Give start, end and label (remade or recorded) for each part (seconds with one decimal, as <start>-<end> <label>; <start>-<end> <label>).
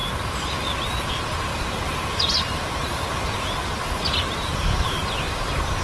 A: 0.0-1.5 recorded; 1.5-5.0 remade; 5.0-5.8 recorded